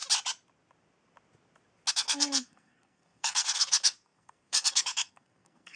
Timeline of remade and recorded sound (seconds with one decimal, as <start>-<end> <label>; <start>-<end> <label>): 0.0-1.9 recorded; 1.9-5.8 remade